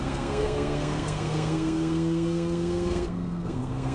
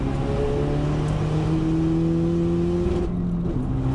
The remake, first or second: first